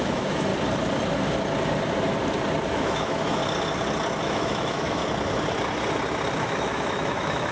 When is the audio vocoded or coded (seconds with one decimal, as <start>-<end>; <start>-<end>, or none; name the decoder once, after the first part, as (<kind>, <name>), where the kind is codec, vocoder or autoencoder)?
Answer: 0.0-0.5 (autoencoder, DAC-VAE); 2.7-3.4; 4.2-5.0; 6.4-7.5